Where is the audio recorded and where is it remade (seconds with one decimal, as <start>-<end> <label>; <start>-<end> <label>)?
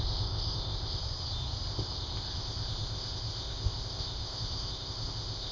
0.0-1.0 remade; 1.0-1.7 recorded; 1.7-5.5 remade